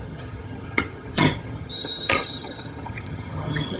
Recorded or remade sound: remade